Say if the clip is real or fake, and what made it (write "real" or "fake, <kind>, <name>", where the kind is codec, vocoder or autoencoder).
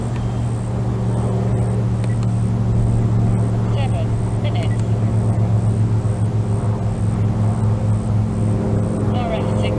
real